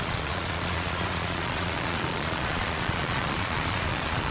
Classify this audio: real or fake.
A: fake